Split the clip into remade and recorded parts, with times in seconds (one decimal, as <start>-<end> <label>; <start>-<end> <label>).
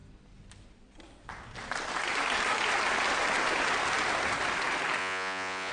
0.0-5.0 recorded; 5.0-5.7 remade